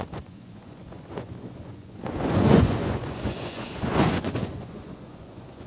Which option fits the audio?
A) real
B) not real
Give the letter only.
B